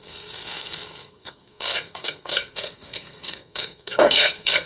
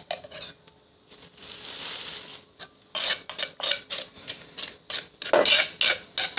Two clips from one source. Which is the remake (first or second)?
first